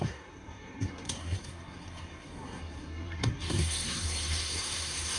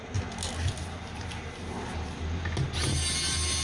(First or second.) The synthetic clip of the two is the first